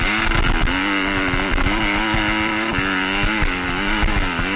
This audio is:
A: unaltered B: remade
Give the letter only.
A